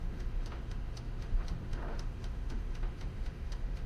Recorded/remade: remade